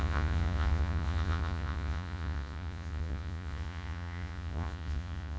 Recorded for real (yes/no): no